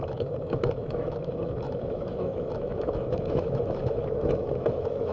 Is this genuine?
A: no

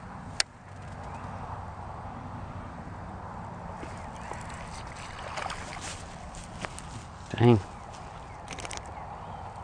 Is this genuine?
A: yes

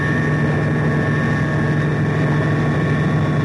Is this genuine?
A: yes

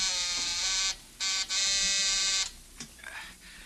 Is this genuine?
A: yes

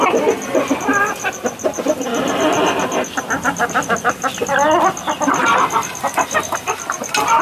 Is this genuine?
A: yes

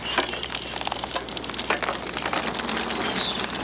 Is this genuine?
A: yes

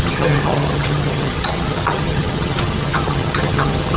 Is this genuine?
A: no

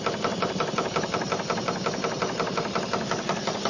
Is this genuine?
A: yes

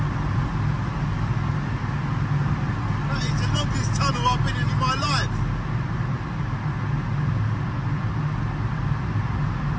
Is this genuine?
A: yes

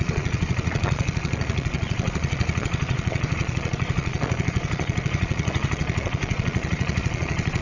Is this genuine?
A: no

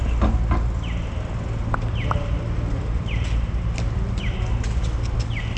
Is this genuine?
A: yes